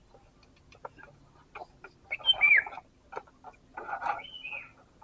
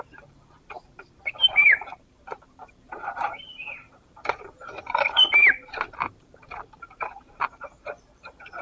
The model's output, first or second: second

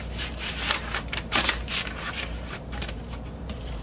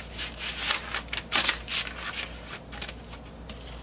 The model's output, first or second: first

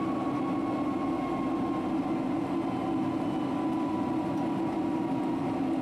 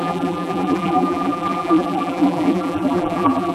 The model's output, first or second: second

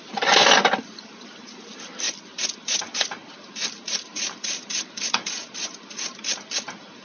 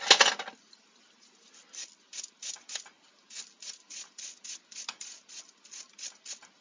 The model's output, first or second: first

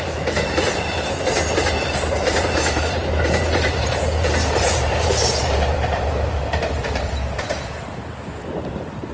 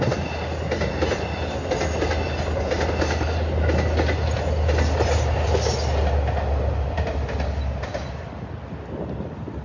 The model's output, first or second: first